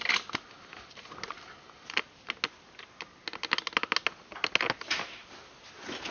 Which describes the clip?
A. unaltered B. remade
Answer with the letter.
A